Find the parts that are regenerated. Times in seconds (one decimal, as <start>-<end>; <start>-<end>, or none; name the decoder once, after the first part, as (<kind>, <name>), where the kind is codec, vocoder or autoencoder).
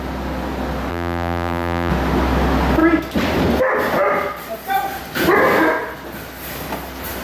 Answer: 0.9-1.9 (vocoder, BigVGAN v2)